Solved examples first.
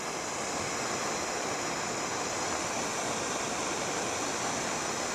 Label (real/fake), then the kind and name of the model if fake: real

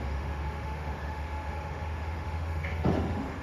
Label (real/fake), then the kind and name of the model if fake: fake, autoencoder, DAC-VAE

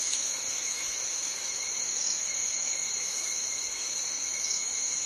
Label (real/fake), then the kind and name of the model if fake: fake, autoencoder, DAC-VAE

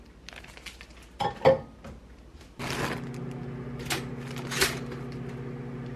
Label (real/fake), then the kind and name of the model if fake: real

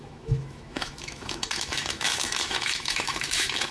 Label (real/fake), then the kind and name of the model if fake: fake, autoencoder, DAC-VAE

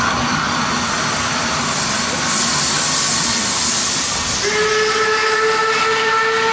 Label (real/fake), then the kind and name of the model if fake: real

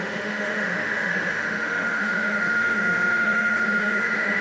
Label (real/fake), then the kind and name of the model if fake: fake, autoencoder, DAC-VAE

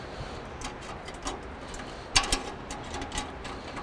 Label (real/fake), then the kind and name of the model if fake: real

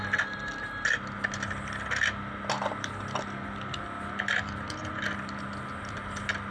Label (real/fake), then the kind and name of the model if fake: real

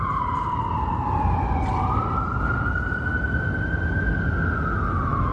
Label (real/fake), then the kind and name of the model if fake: real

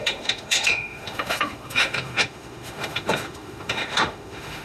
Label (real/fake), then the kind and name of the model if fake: fake, autoencoder, DAC-VAE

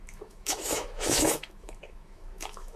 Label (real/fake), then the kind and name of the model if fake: fake, autoencoder, DAC-VAE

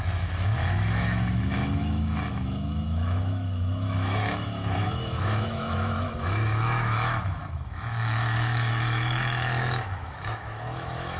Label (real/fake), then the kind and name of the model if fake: fake, autoencoder, DAC-VAE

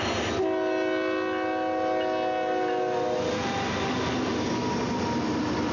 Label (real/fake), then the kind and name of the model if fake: real